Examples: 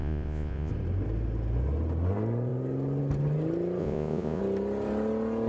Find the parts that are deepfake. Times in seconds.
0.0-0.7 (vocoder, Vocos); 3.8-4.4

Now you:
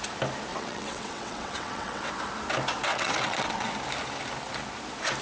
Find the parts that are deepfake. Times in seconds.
0.5-2.1 (vocoder, WaveNeXt); 2.9-3.7

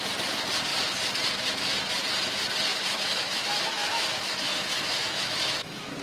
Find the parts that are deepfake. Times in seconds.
2.7-6.0 (autoencoder, DAC-VAE)

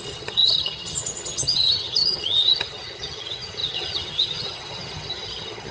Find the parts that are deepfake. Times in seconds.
0.0-5.7 (vocoder, HiFi-GAN)

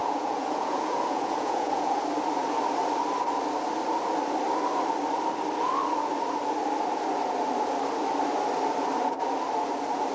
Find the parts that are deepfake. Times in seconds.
0.0-2.0 (vocoder, Vocos)